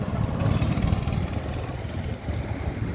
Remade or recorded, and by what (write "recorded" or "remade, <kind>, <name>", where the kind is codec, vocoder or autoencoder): recorded